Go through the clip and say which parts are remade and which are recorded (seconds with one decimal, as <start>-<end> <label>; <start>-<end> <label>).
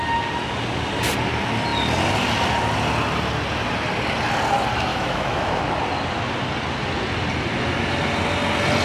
0.0-4.9 recorded; 4.9-5.6 remade; 5.6-8.8 recorded